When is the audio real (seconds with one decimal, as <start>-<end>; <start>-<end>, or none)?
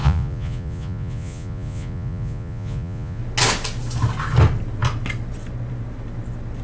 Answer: 3.2-6.6